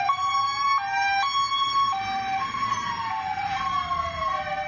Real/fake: fake